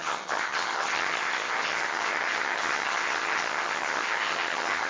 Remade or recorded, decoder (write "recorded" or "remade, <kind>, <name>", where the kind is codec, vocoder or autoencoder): remade, vocoder, HiFi-GAN